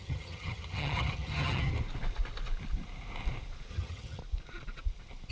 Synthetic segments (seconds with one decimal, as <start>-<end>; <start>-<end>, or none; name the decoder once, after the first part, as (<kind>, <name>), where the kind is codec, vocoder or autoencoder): 0.0-1.7 (vocoder, HiFi-GAN); 3.7-4.2